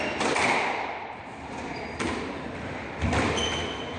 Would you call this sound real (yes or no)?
yes